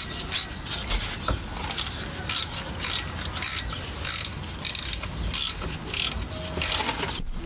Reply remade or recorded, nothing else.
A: recorded